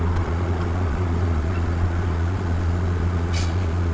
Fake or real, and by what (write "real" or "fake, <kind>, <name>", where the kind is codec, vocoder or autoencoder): fake, vocoder, Vocos